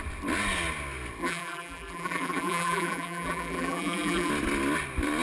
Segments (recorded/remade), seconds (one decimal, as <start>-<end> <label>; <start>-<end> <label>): 0.0-1.2 recorded; 1.2-4.3 remade; 4.3-5.2 recorded